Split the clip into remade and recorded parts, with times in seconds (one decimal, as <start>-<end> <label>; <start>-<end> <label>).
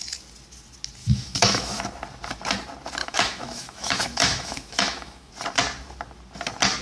0.0-1.0 recorded; 1.0-1.8 remade; 1.8-3.0 recorded; 3.0-5.3 remade; 5.3-6.8 recorded